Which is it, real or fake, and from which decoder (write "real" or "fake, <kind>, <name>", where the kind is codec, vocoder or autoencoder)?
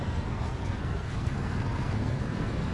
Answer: fake, codec, SNAC